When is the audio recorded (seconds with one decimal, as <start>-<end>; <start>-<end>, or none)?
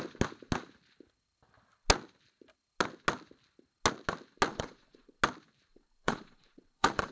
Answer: 0.0-4.5; 5.2-5.7